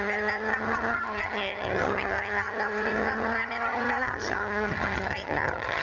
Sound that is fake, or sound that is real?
fake